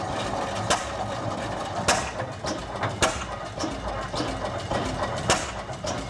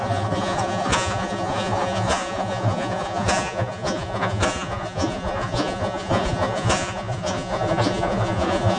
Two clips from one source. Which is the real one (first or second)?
first